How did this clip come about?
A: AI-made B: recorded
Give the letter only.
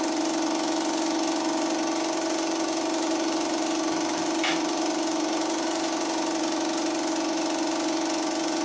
B